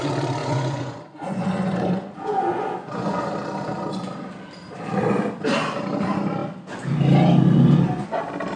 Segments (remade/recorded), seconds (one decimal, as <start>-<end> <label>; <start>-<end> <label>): 0.0-0.4 recorded; 0.4-3.2 remade; 3.2-8.6 recorded